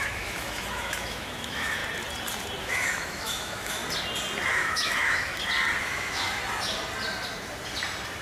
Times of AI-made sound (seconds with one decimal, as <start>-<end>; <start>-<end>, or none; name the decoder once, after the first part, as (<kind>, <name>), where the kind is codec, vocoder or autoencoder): 0.0-1.8 (autoencoder, DAC-VAE); 2.6-3.8; 4.5-5.3; 5.8-6.4

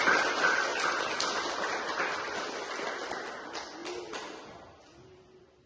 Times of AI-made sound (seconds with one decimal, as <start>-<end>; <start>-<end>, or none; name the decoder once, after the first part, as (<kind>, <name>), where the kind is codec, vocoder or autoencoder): none

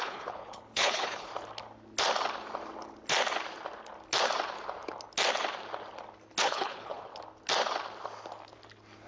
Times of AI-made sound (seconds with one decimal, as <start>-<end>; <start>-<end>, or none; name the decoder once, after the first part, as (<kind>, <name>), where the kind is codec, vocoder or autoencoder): 0.0-1.3 (codec, HILCodec); 6.4-7.1

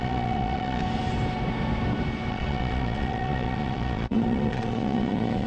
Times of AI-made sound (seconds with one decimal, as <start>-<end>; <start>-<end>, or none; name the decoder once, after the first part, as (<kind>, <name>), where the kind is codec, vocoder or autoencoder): 0.0-0.8 (vocoder, Vocos); 2.3-5.5

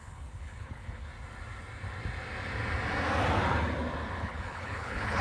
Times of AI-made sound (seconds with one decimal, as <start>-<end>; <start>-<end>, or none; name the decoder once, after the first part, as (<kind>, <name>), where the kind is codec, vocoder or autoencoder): 0.0-1.1 (codec, HILCodec); 4.2-5.2

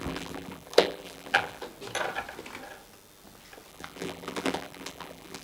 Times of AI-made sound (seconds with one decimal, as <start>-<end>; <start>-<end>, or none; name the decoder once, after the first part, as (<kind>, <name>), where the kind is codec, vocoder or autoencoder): 0.0-1.6 (vocoder, BigVGAN v2); 3.7-5.4